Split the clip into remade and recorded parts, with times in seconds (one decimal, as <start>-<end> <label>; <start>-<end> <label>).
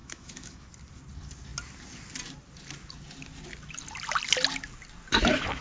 0.0-0.7 remade; 0.7-5.6 recorded